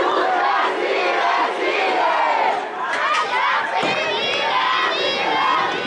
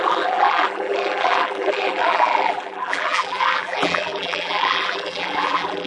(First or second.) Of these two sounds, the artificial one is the second